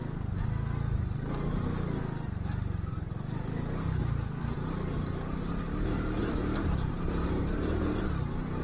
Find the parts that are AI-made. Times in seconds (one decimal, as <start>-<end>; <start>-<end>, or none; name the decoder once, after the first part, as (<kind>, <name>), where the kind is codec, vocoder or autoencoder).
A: 6.2-8.0 (vocoder, BigVGAN v2)